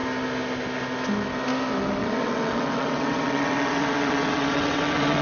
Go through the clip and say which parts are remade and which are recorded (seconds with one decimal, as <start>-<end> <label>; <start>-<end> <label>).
0.0-2.0 recorded; 2.0-5.2 remade